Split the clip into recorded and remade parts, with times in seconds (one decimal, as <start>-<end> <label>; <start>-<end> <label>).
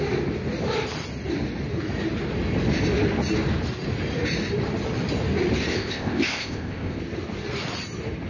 0.0-5.7 recorded; 5.7-7.0 remade; 7.0-8.3 recorded